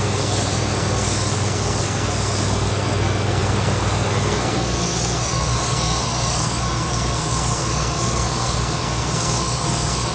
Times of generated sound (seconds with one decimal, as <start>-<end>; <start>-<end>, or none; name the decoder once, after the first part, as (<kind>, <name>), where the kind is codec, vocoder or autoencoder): 0.0-10.1 (codec, SNAC)